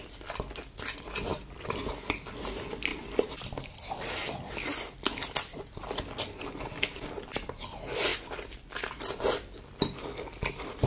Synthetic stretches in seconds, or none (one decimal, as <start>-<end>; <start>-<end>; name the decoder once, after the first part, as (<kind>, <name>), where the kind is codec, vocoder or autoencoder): 1.3-1.8 (vocoder, BigVGAN v2); 2.9-4.8; 8.1-9.0